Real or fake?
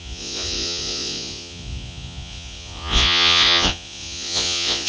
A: fake